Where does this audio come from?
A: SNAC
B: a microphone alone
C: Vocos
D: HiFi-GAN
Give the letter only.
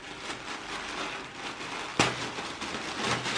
B